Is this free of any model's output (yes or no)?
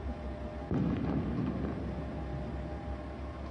yes